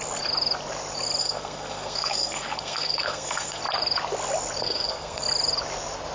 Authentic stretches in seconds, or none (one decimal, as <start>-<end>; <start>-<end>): 0.0-1.2; 3.6-4.6; 5.2-6.1